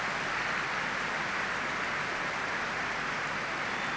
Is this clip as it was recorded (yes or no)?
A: no